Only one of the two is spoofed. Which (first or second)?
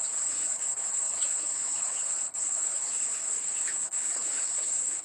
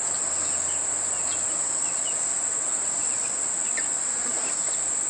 first